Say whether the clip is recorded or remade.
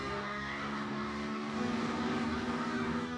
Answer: remade